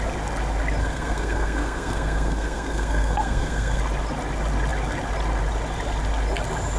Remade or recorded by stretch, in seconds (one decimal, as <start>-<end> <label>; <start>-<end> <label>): 0.0-0.8 recorded; 0.8-3.8 remade; 3.8-6.8 recorded